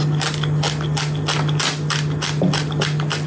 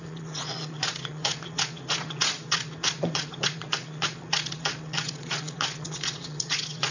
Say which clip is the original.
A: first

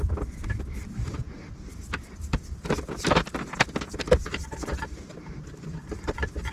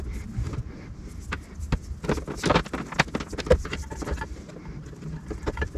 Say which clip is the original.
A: second